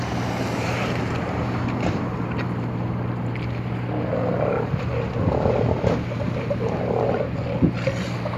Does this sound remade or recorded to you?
recorded